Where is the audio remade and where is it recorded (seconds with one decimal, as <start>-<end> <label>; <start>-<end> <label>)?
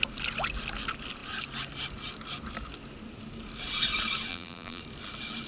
0.0-4.3 recorded; 4.3-4.8 remade; 4.8-5.5 recorded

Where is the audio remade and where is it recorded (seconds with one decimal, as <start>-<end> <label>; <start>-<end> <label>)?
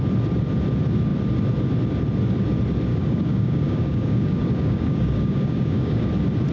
0.0-2.9 recorded; 2.9-6.1 remade; 6.1-6.5 recorded